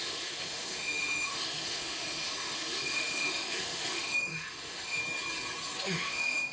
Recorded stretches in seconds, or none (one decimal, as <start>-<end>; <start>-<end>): 5.0-5.8